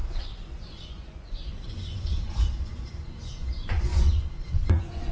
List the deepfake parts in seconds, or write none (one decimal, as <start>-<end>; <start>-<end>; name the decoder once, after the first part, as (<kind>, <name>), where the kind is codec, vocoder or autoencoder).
0.0-5.1 (vocoder, Vocos)